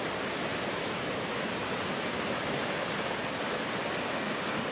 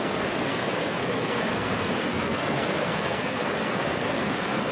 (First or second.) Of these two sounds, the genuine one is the first